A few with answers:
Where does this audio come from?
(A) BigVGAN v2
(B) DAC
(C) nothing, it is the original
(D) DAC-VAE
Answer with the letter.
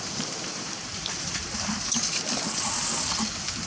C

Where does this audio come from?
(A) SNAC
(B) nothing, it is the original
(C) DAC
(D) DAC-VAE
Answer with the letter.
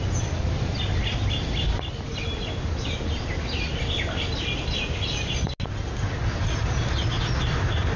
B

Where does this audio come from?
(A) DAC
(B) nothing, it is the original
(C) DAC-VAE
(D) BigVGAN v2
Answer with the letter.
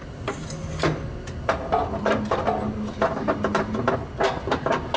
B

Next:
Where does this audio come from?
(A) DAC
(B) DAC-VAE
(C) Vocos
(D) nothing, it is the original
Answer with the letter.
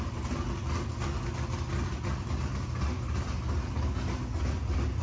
D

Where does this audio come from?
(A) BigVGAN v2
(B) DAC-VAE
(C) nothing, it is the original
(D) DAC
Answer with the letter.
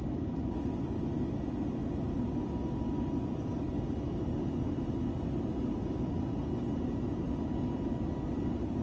C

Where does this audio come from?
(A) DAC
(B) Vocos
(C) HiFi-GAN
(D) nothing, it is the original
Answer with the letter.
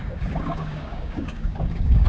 A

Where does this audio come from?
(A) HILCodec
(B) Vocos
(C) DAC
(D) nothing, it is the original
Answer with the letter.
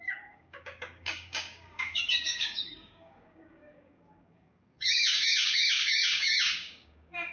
C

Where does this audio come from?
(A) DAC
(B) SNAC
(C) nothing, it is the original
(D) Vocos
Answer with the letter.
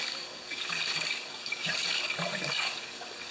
A